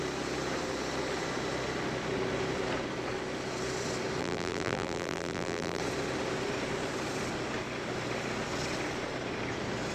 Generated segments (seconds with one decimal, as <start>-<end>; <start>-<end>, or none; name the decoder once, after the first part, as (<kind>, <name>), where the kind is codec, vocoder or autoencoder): 4.2-5.8 (vocoder, BigVGAN v2)